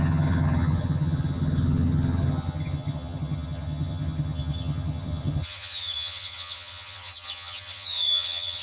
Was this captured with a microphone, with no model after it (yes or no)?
no